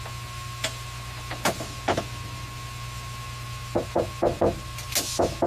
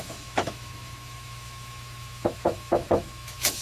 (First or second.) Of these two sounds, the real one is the first